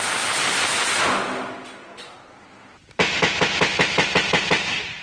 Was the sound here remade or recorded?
recorded